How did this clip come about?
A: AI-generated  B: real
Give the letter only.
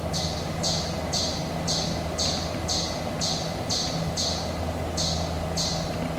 B